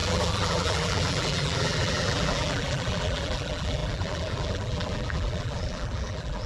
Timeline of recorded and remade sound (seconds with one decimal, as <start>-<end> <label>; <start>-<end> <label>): 0.0-6.5 remade